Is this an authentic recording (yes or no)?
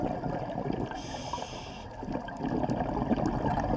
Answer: yes